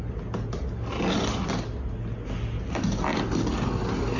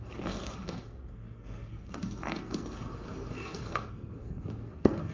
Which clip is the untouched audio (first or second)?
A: first